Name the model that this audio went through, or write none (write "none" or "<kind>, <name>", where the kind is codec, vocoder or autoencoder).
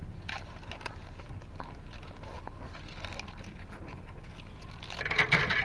none